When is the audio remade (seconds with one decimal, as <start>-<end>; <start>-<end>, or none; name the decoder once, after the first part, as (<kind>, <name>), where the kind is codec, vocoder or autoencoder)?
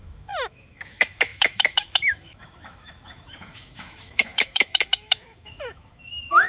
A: 0.0-6.5 (autoencoder, DAC-VAE)